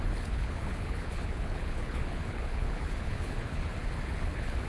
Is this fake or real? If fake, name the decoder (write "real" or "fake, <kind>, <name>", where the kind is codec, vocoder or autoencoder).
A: fake, codec, HILCodec